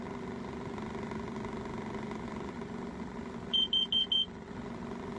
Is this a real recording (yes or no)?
yes